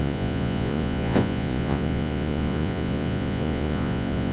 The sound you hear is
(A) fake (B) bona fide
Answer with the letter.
A